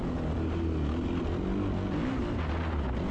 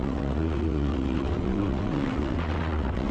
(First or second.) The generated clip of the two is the second